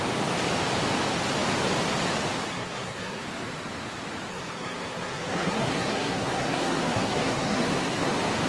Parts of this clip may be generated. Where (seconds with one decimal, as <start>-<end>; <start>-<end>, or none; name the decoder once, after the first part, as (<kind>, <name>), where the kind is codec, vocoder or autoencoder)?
2.5-3.2 (codec, SNAC); 4.3-8.1